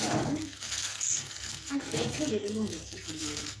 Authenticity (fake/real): fake